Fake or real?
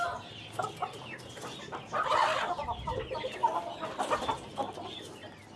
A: real